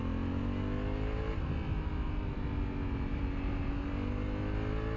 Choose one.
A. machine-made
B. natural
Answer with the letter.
B